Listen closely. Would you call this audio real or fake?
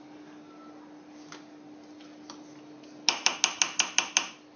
real